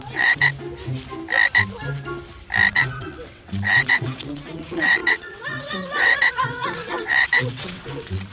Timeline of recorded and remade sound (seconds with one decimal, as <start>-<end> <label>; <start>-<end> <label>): 0.0-0.4 remade; 0.4-2.7 recorded; 2.7-8.3 remade

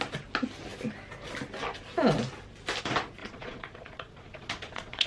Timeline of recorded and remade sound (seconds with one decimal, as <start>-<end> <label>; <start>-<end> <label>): 0.0-3.2 recorded; 3.2-5.1 remade

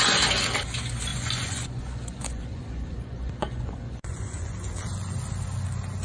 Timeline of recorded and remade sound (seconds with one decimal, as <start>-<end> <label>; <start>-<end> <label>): 0.0-1.1 recorded; 1.1-4.7 remade; 4.7-6.0 recorded